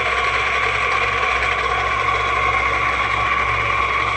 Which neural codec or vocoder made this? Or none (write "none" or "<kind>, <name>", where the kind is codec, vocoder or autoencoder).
none